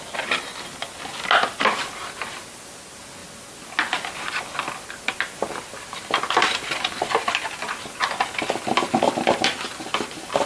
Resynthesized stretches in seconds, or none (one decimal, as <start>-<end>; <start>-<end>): none